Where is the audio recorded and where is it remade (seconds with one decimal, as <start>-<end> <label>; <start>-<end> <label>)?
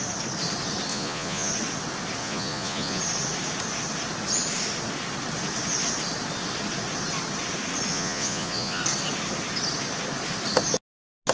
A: 0.0-0.9 recorded; 0.9-1.5 remade; 1.5-2.2 recorded; 2.2-3.0 remade; 3.0-7.9 recorded; 7.9-8.8 remade; 8.8-11.3 recorded